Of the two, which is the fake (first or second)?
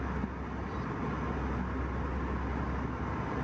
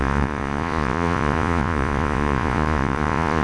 second